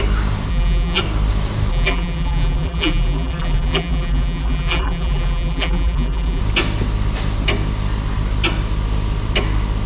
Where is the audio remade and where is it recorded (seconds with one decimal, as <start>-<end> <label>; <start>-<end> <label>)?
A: 0.0-0.5 recorded; 0.5-1.0 remade; 1.0-1.7 recorded; 1.7-6.4 remade; 6.4-9.9 recorded